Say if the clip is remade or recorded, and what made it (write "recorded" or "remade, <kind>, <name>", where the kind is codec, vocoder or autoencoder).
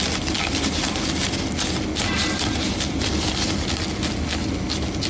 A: recorded